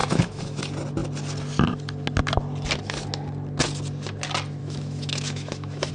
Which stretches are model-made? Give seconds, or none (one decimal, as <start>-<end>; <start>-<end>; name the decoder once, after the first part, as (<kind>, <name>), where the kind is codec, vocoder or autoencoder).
0.0-0.6 (autoencoder, DAC-VAE); 4.6-5.9